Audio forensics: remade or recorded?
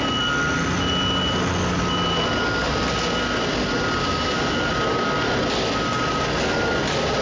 recorded